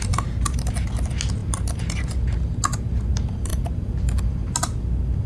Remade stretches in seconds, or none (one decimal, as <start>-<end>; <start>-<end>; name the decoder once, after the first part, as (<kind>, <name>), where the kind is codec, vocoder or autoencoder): none